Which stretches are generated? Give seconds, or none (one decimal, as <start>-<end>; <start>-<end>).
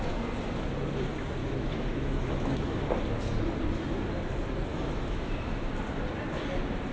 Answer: 1.4-2.8; 4.7-5.7